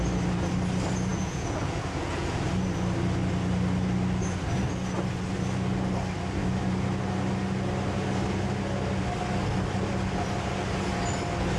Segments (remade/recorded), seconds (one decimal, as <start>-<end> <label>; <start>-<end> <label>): 0.0-1.1 recorded; 1.1-2.5 remade; 2.5-11.6 recorded